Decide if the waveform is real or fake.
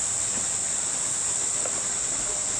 real